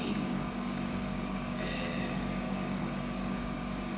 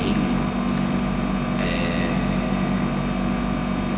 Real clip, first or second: second